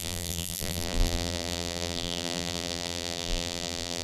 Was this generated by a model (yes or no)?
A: yes